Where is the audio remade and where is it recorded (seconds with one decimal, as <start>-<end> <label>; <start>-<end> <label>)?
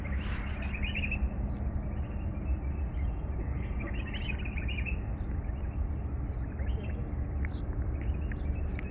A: 0.0-8.9 recorded